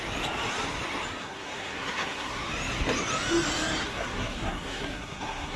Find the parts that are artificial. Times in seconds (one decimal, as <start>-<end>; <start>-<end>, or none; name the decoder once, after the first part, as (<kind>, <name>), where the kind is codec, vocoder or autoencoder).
1.2-2.4 (codec, SNAC); 3.8-5.6